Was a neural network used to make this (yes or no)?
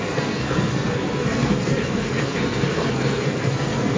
yes